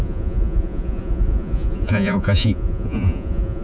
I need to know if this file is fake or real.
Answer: fake